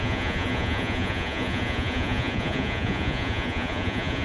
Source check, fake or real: fake